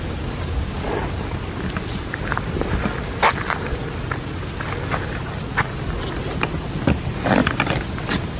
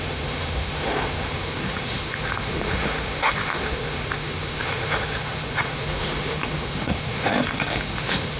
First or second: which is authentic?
first